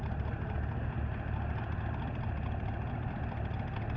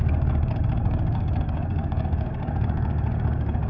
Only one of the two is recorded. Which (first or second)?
first